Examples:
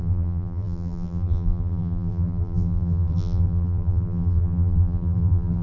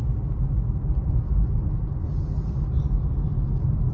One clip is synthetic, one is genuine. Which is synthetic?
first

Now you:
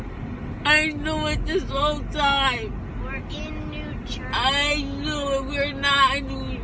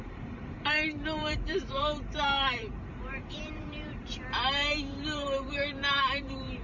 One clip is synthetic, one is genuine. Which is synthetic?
second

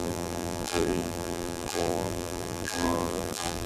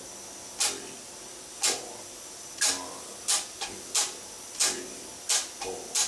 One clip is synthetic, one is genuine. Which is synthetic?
first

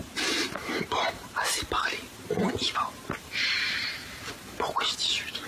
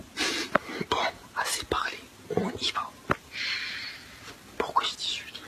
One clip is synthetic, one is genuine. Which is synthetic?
first